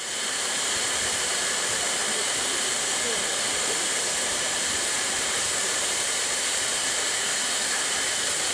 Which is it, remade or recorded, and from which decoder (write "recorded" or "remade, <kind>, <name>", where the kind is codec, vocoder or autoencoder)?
remade, vocoder, BigVGAN v2